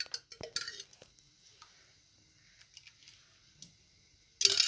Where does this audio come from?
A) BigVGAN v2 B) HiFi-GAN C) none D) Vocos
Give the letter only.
C